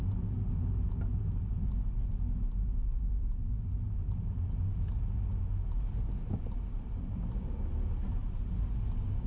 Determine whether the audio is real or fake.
real